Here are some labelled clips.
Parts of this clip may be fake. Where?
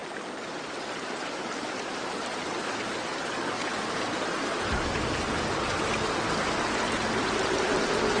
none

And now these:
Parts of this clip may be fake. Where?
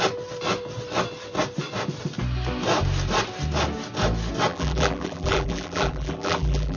4.5-6.8 (vocoder, BigVGAN v2)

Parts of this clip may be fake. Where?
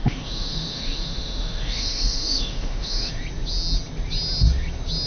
0.0-3.1 (autoencoder, DAC-VAE)